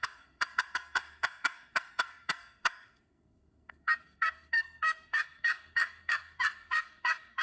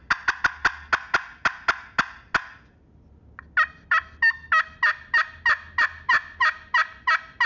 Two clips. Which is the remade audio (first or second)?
first